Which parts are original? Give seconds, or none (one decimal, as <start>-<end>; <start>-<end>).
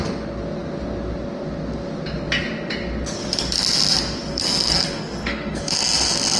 0.0-4.3; 5.6-6.4